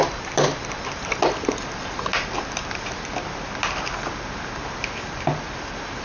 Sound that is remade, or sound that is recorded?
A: recorded